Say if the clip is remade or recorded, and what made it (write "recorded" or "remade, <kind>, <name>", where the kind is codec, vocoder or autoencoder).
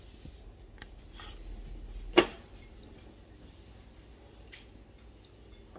recorded